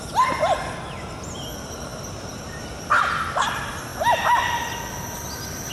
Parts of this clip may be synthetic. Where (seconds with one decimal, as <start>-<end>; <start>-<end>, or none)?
none